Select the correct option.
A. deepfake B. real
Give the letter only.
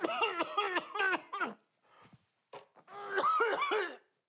B